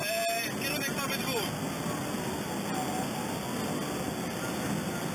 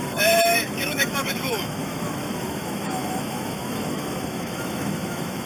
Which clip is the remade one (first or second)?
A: second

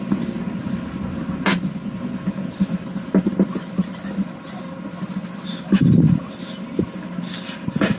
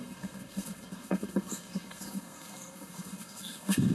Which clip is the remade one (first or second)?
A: second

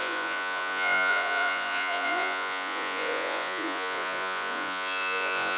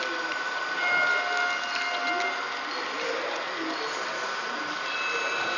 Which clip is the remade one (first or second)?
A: first